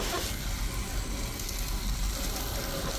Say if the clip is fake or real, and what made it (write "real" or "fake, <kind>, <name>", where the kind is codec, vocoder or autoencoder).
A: real